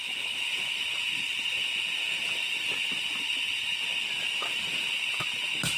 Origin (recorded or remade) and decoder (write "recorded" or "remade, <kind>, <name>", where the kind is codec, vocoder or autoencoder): recorded